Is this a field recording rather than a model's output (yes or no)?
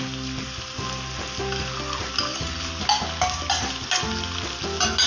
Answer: yes